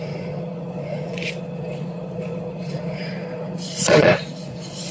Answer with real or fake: fake